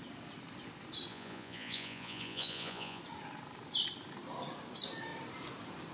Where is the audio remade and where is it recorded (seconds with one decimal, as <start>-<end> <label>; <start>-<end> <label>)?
0.0-1.1 recorded; 1.1-3.0 remade; 3.0-5.9 recorded